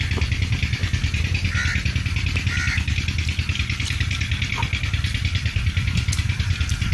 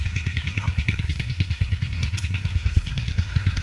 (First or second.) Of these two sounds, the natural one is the first